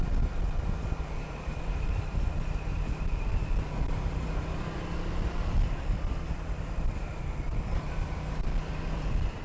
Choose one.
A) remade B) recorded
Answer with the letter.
A